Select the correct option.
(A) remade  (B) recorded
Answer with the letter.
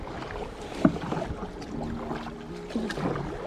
B